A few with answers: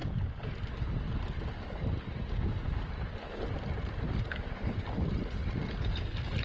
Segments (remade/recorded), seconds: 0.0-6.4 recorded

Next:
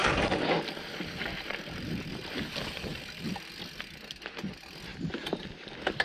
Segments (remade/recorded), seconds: 0.0-3.2 remade; 3.2-4.9 recorded; 4.9-6.0 remade

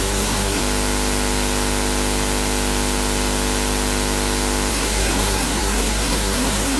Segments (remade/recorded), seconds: 0.0-0.6 remade; 0.6-4.7 recorded; 4.7-6.8 remade

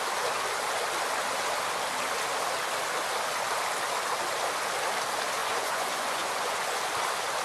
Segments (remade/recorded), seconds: 0.0-5.4 recorded; 5.4-6.8 remade; 6.8-7.4 recorded

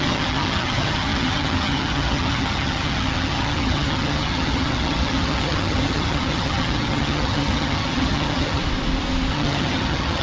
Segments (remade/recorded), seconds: 0.0-8.6 remade; 8.6-9.3 recorded; 9.3-10.2 remade